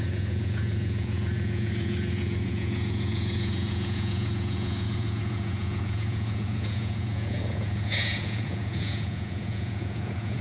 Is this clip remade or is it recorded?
remade